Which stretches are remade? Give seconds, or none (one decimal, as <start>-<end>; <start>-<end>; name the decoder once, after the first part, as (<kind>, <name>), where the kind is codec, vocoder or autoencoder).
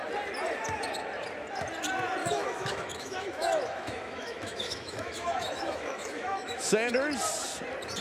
2.2-6.9 (autoencoder, DAC-VAE)